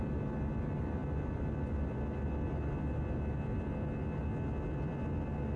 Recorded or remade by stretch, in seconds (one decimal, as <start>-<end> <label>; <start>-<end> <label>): 0.0-5.6 recorded